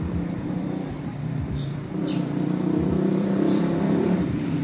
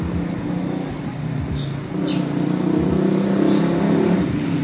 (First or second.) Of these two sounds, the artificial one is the first